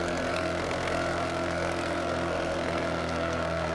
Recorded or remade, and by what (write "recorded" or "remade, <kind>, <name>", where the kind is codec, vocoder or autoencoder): remade, codec, SNAC